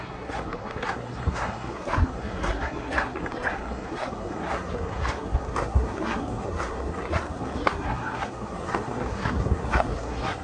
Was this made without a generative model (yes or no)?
no